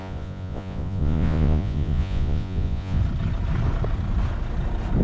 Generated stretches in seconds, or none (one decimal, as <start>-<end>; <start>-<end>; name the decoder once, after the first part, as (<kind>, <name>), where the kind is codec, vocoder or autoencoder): 0.0-3.0 (vocoder, Vocos)